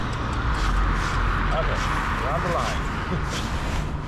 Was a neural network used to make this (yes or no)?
no